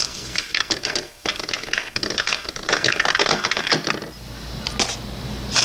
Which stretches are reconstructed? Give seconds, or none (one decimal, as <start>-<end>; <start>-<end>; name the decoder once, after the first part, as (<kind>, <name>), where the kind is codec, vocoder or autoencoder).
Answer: 0.0-3.7 (codec, SNAC)